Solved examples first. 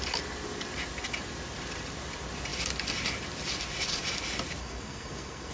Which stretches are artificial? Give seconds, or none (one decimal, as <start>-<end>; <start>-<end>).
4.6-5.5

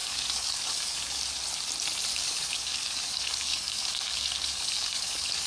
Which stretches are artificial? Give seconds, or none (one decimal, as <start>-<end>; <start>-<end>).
0.0-1.2; 2.1-5.5

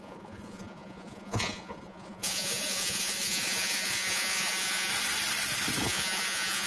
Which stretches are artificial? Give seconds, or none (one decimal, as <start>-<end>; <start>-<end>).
0.0-4.9; 5.8-6.7